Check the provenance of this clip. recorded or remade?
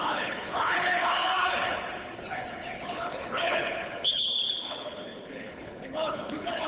remade